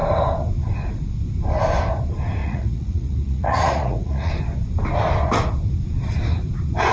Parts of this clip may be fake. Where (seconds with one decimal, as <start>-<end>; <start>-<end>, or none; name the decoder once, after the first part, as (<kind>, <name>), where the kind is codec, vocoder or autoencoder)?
2.4-4.3 (vocoder, Vocos)